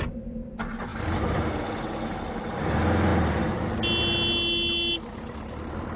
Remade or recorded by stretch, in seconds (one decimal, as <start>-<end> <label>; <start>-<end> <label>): 0.0-6.0 recorded